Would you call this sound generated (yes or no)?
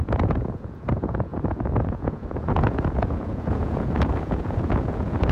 yes